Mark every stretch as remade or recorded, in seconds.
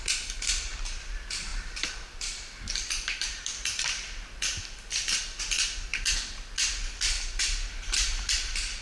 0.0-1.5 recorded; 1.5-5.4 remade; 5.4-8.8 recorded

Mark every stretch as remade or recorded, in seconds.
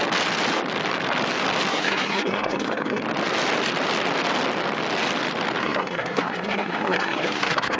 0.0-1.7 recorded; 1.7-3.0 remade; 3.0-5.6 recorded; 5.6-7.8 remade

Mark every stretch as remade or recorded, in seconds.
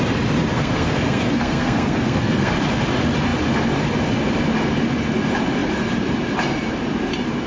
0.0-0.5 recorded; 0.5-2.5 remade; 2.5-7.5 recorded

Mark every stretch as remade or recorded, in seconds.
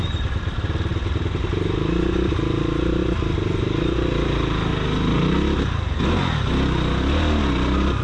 0.0-8.0 recorded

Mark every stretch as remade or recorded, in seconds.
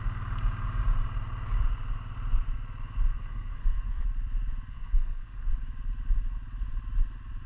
0.0-3.1 recorded; 3.1-4.0 remade; 4.0-4.7 recorded; 4.7-5.5 remade; 5.5-7.5 recorded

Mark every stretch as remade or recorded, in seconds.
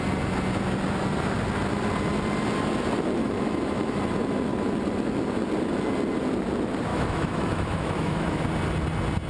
0.0-3.2 recorded; 3.2-4.0 remade; 4.0-6.9 recorded; 6.9-8.4 remade; 8.4-9.3 recorded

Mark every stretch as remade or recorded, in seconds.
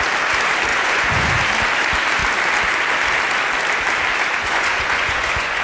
0.0-0.7 recorded; 0.7-1.4 remade; 1.4-4.4 recorded; 4.4-5.6 remade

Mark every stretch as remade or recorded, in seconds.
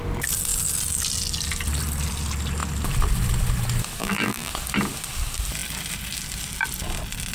0.0-4.0 recorded; 4.0-4.5 remade; 4.5-7.3 recorded